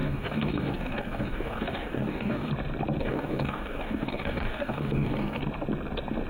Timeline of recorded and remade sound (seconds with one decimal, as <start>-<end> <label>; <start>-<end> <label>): 0.0-2.5 remade; 2.5-3.0 recorded; 3.0-5.4 remade; 5.4-6.3 recorded